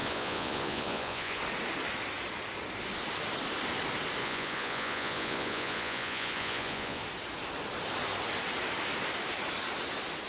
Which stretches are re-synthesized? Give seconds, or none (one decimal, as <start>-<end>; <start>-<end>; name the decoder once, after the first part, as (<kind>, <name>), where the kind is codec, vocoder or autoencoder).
0.0-1.4 (vocoder, Vocos); 4.2-7.0